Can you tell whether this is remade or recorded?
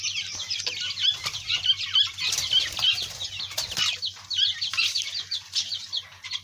recorded